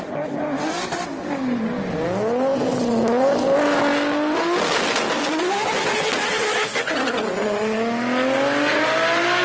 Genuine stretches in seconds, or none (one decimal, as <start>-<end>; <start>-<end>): 0.0-9.4